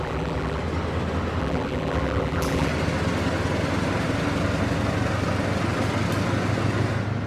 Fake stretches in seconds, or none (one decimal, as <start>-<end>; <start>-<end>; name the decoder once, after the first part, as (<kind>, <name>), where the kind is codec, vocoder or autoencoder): 0.0-0.6 (vocoder, BigVGAN v2); 1.4-2.7